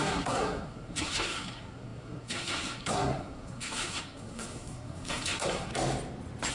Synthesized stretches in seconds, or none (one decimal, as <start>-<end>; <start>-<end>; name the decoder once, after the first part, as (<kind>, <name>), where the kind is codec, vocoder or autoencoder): 0.0-5.7 (codec, SNAC)